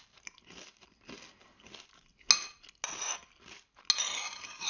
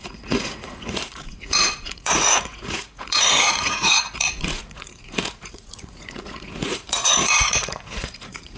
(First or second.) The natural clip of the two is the first